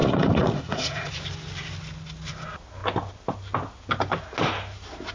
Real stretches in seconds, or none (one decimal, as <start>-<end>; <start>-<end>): 1.1-5.1